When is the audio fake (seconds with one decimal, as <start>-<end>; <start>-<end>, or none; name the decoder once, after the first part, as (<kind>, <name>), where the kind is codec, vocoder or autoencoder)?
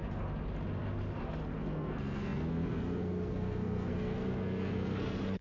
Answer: 1.5-5.4 (codec, SNAC)